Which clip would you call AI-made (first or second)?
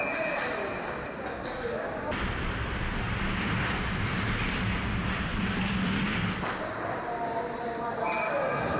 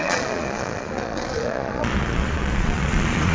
second